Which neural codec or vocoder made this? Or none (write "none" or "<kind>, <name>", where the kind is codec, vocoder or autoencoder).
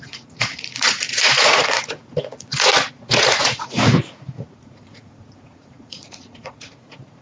vocoder, Vocos